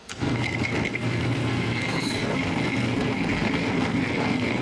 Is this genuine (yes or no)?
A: no